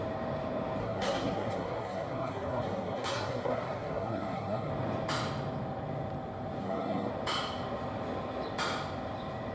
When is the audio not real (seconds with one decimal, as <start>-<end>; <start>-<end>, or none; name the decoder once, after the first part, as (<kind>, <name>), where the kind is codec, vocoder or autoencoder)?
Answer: 0.8-4.7 (codec, SNAC); 6.6-7.1